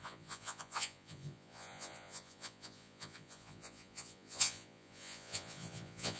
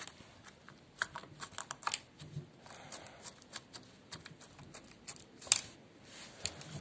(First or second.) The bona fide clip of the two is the second